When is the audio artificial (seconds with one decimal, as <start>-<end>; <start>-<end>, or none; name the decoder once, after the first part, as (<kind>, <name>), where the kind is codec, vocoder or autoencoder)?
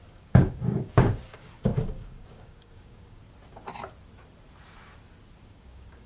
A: 0.0-3.2 (codec, DAC); 5.4-6.1